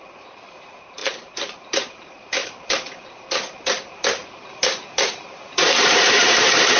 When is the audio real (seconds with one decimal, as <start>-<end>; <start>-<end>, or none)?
none